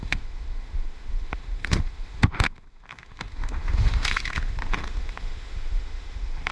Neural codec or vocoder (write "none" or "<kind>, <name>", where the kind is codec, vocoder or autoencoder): autoencoder, DAC-VAE